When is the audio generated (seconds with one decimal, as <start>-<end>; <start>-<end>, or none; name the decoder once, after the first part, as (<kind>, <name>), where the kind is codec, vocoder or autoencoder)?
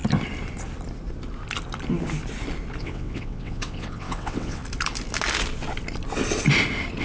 2.8-4.6 (vocoder, WaveNeXt)